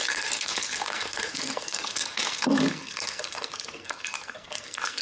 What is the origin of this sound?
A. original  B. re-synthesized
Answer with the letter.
B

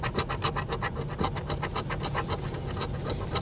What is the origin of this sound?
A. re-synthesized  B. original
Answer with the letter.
B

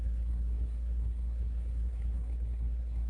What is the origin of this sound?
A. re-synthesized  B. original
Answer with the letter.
A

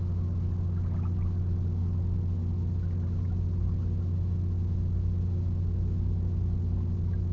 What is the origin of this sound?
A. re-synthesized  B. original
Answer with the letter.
B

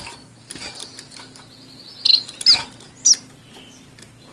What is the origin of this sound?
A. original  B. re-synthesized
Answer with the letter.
A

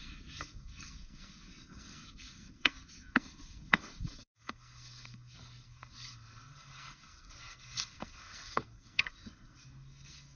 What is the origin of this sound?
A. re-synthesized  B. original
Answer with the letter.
A